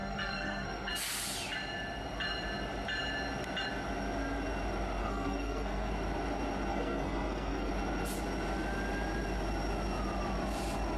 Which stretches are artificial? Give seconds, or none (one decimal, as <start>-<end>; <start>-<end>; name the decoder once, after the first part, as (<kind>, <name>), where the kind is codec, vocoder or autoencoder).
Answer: 0.0-0.9 (codec, SNAC); 5.0-5.9; 6.7-7.7